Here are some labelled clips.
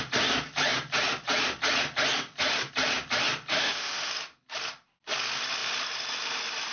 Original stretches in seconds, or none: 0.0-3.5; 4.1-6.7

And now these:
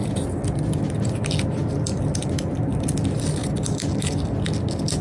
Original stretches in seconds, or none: 0.0-5.0